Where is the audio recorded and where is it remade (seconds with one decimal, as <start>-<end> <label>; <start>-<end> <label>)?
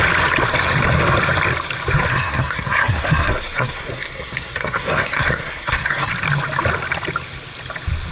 0.0-2.1 recorded; 2.1-6.1 remade; 6.1-8.1 recorded